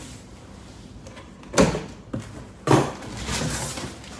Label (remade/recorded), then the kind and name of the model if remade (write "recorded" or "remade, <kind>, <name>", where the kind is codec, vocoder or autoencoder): recorded